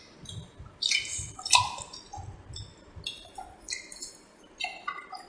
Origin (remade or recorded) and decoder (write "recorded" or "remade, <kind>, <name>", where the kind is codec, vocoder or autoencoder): recorded